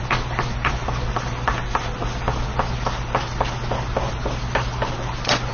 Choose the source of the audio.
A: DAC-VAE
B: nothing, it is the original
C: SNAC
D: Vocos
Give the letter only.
B